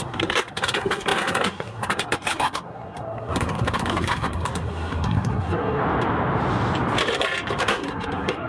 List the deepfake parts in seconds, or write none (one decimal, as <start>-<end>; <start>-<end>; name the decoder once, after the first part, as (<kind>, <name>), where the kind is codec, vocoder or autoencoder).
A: 0.0-5.8 (codec, SNAC); 7.6-8.5